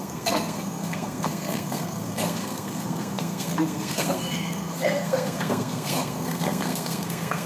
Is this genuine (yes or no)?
no